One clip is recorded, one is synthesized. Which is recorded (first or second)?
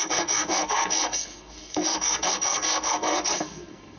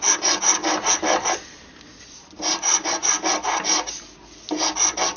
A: second